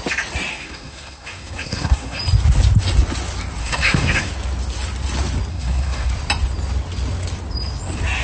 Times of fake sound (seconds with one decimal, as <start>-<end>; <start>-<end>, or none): 0.5-2.2; 3.6-4.3; 5.5-6.1